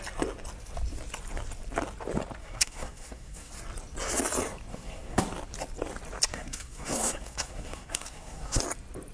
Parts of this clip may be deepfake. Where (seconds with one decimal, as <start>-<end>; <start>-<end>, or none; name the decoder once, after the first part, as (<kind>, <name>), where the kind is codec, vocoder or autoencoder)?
2.4-3.5 (codec, SNAC); 4.7-5.2; 6.3-8.6